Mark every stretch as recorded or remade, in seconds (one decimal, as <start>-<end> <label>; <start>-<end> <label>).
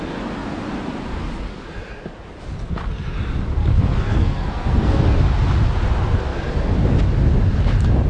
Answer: 0.0-3.7 recorded; 3.7-5.2 remade; 5.2-8.1 recorded